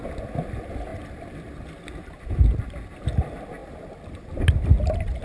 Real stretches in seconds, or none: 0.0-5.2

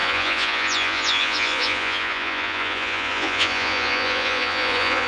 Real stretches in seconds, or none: none

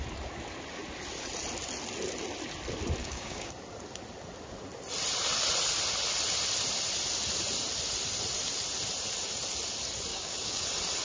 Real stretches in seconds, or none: 0.0-3.0; 3.5-10.1; 10.6-11.0

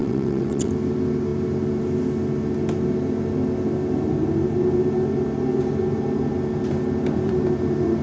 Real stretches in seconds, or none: 0.7-8.0

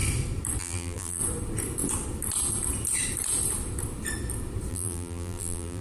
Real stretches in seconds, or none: 0.0-0.6; 1.2-4.7

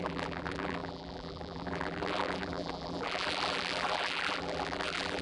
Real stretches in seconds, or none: none

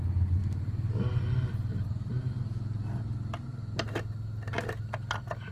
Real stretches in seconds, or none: 0.0-5.5